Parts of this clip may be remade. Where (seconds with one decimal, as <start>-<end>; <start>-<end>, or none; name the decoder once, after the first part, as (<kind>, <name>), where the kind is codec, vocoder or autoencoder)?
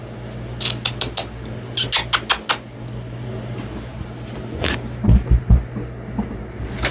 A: 3.9-5.4 (vocoder, BigVGAN v2)